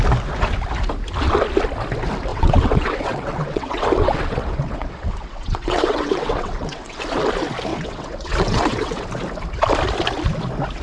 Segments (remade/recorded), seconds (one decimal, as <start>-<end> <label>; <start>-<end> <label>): 0.0-2.3 recorded; 2.3-7.0 remade; 7.0-7.7 recorded; 7.7-9.1 remade; 9.1-10.8 recorded